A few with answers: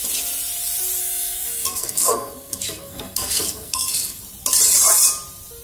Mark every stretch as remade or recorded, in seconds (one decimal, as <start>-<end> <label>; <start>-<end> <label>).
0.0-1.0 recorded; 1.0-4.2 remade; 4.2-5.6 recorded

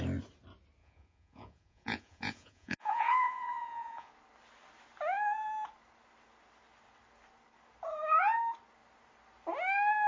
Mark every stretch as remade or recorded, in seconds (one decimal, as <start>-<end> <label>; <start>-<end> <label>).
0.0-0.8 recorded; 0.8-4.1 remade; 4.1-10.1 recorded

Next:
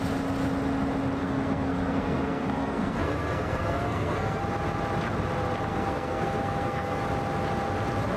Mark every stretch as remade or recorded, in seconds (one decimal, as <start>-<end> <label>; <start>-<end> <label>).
0.0-1.2 recorded; 1.2-4.4 remade; 4.4-5.7 recorded; 5.7-7.0 remade; 7.0-8.2 recorded

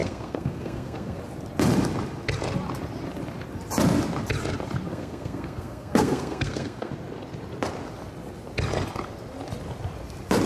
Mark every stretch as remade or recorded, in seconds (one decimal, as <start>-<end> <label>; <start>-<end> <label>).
0.0-1.2 remade; 1.2-4.9 recorded; 4.9-6.9 remade; 6.9-10.5 recorded

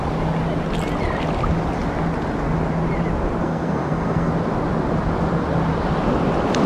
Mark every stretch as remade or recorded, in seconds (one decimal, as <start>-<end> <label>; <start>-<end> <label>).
0.0-3.4 recorded; 3.4-4.3 remade; 4.3-6.7 recorded

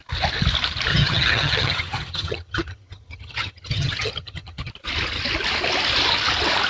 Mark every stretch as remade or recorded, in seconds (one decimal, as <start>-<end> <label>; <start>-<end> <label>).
0.0-0.9 recorded; 0.9-4.7 remade; 4.7-6.7 recorded

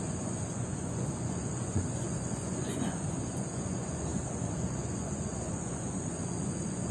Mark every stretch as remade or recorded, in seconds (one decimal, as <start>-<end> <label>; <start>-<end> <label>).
0.0-6.9 remade

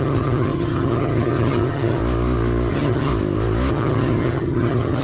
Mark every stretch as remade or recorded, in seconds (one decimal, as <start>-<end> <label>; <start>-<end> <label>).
0.0-2.0 remade; 2.0-2.7 recorded; 2.7-3.1 remade; 3.1-3.7 recorded; 3.7-5.0 remade